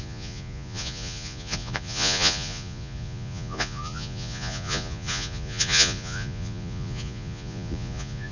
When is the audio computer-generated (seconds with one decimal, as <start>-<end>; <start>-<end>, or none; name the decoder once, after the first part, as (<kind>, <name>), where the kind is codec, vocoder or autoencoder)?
0.0-8.3 (vocoder, Vocos)